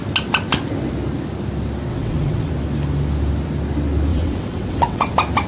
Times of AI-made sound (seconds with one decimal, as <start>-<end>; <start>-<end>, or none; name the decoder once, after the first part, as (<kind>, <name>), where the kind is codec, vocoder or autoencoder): 1.9-2.5 (vocoder, WaveNeXt); 4.1-5.1